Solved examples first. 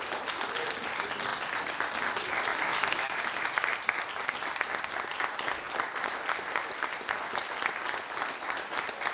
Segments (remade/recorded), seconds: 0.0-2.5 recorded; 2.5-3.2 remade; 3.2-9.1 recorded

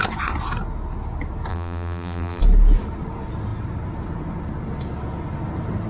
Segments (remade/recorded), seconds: 0.0-1.5 recorded; 1.5-2.4 remade; 2.4-5.9 recorded

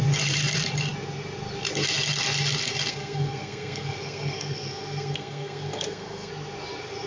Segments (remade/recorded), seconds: 0.0-2.9 recorded; 2.9-6.3 remade; 6.3-7.1 recorded

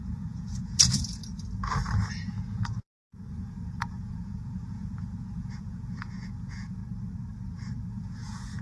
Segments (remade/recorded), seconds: 0.0-1.2 remade; 1.2-2.1 recorded; 2.1-6.8 remade; 6.8-7.9 recorded; 7.9-8.6 remade

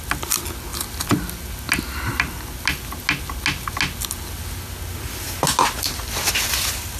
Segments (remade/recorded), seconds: 0.0-7.0 recorded